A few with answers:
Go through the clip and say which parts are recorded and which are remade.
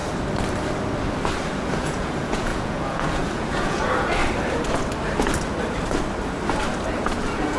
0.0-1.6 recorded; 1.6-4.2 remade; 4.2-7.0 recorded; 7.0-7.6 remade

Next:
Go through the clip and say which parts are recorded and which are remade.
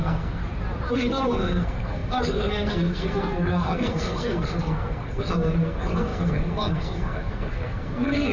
0.0-0.4 remade; 0.4-0.9 recorded; 0.9-8.3 remade